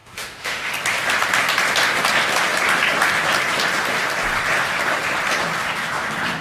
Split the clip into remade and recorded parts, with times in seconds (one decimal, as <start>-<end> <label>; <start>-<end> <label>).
0.0-0.7 remade; 0.7-6.4 recorded